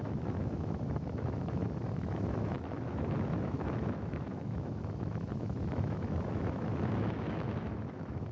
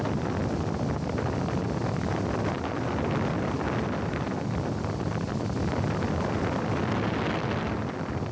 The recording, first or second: second